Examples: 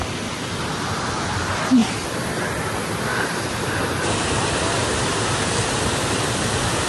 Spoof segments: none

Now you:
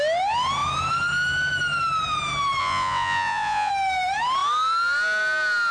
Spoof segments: 2.6-3.7 (vocoder, Vocos)

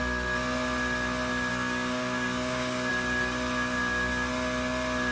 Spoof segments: 1.5-2.9 (codec, DAC)

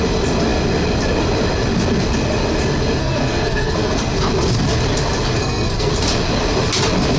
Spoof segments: 3.0-4.1 (codec, SNAC); 5.4-5.9

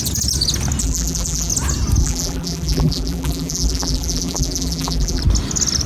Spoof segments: 0.8-1.5 (vocoder, BigVGAN v2); 2.0-5.2

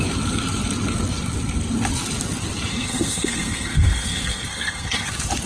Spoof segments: 2.7-5.1 (codec, SNAC)